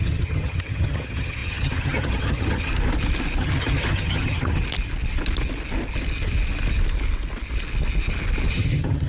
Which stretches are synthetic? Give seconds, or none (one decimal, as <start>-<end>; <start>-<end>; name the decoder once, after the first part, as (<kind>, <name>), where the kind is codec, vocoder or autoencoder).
0.0-2.7 (vocoder, HiFi-GAN); 3.4-4.6; 8.5-9.1